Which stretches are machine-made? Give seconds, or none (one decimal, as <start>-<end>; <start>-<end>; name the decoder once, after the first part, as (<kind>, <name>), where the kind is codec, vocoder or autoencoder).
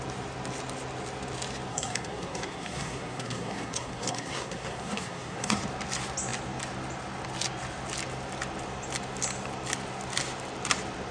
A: 1.7-5.6 (codec, SNAC)